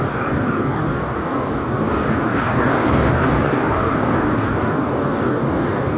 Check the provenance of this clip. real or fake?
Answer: fake